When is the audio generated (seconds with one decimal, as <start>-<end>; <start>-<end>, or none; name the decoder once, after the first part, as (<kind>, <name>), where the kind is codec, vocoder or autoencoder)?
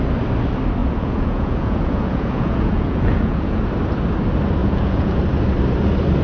0.8-3.6 (vocoder, Vocos); 4.6-5.2